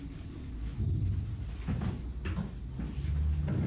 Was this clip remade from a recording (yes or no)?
no